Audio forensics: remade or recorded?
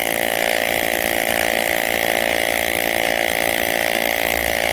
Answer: recorded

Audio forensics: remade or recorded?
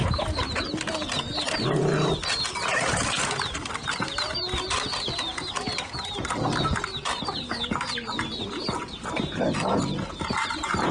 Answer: recorded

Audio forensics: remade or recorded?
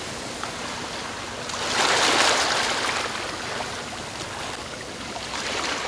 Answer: recorded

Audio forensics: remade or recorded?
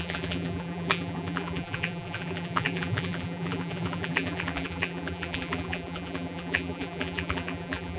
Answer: remade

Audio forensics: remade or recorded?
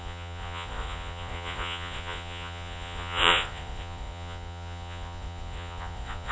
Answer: remade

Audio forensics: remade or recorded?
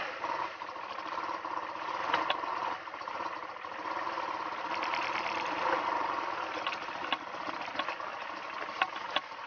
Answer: recorded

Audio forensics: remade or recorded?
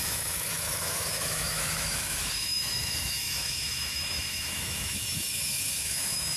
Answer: remade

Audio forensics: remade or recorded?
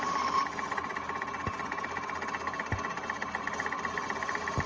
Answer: recorded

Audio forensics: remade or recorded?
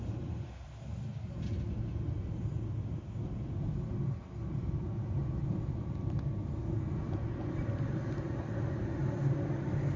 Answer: recorded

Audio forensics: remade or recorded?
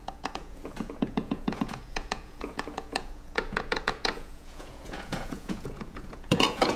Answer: remade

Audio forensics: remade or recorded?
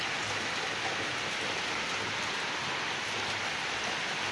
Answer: recorded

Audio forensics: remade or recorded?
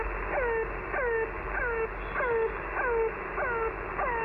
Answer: recorded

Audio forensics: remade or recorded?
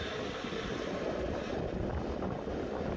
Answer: recorded